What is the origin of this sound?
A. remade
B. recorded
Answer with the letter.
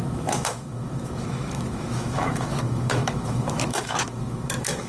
A